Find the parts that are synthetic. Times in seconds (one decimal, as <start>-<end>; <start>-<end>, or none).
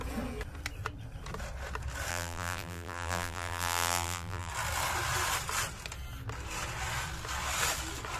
2.1-4.5